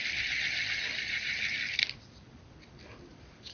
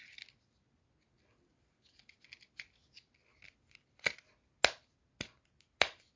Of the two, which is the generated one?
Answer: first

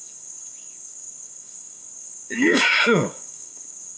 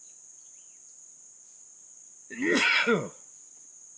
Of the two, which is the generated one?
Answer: first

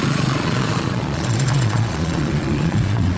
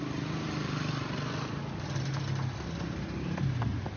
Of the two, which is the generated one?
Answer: first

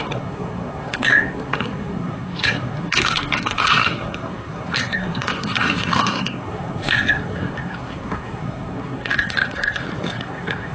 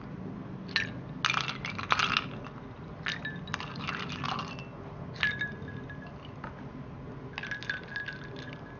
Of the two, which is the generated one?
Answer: first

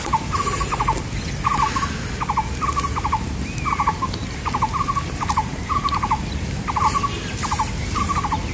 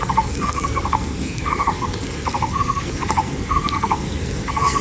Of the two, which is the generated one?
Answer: second